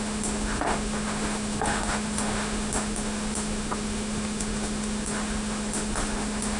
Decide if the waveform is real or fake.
fake